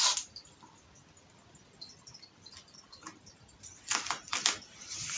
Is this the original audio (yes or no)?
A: yes